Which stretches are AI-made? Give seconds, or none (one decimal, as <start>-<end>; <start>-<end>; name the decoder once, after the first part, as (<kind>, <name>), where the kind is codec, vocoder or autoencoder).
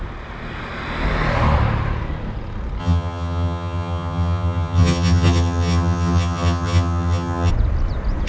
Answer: 2.8-7.5 (vocoder, HiFi-GAN)